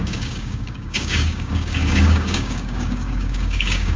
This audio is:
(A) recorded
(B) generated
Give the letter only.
B